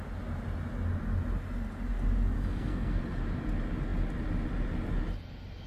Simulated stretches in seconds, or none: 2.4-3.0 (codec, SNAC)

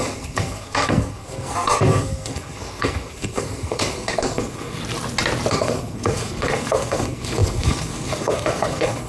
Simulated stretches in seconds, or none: 0.0-4.8 (codec, SNAC); 5.5-9.1

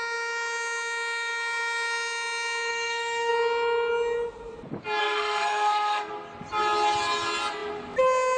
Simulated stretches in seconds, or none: 2.7-3.3 (codec, SNAC); 5.0-6.1

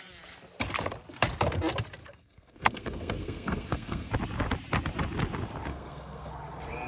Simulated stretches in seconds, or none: 2.0-4.1 (codec, SNAC); 5.7-6.3

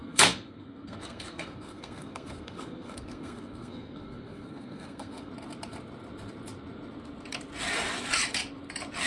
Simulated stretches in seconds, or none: 0.0-5.3 (codec, SNAC)